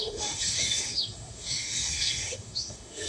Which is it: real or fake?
fake